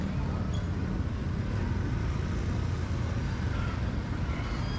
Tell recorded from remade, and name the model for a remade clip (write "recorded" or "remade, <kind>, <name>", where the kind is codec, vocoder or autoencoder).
recorded